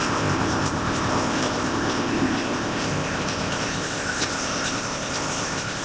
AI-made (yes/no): yes